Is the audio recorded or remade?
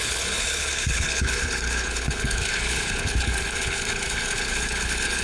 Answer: remade